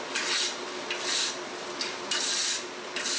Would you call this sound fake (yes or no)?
no